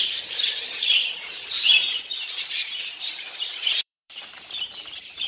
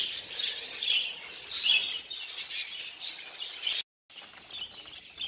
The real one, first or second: second